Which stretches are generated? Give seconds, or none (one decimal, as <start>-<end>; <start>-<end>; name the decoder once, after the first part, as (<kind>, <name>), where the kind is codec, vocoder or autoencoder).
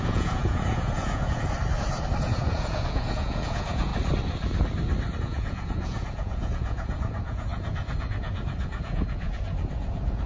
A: 0.0-1.4 (vocoder, Vocos); 2.2-3.9; 5.2-10.3